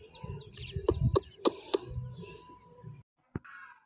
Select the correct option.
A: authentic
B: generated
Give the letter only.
A